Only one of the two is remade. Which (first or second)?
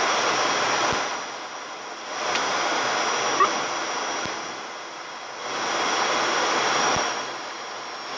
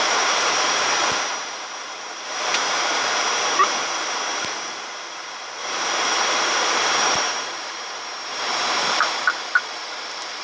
second